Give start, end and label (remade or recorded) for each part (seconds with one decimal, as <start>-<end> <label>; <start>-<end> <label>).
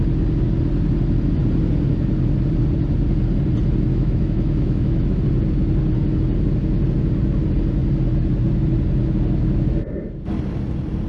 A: 0.0-3.9 recorded; 3.9-5.2 remade; 5.2-11.1 recorded